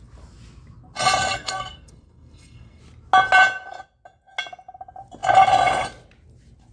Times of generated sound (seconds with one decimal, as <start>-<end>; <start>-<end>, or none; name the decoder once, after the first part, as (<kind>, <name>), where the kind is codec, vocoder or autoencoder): 1.3-2.8 (codec, SNAC)